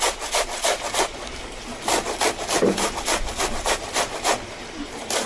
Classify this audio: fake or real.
real